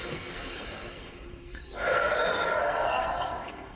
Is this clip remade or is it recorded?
remade